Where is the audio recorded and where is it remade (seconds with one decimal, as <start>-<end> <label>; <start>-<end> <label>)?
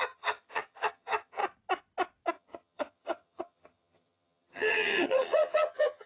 0.0-1.4 remade; 1.4-2.3 recorded; 2.3-6.1 remade